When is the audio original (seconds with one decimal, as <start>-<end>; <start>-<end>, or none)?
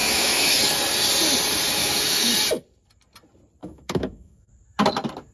0.6-1.8; 2.3-3.6; 4.5-5.3